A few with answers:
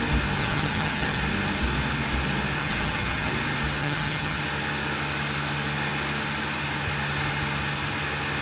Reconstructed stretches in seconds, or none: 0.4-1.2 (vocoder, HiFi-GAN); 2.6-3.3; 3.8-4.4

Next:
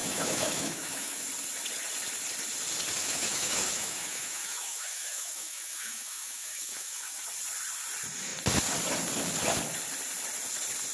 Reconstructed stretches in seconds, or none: 0.0-1.3 (autoencoder, DAC-VAE); 3.0-7.2